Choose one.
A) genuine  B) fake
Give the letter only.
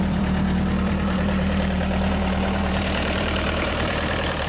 B